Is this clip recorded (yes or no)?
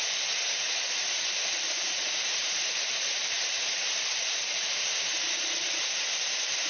no